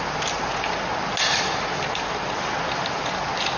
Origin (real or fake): real